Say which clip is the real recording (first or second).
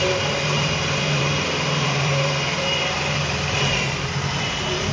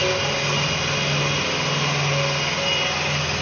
second